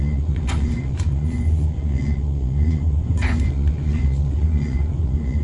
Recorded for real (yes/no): no